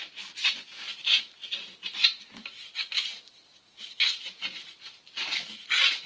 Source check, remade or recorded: recorded